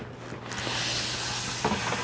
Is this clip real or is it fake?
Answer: real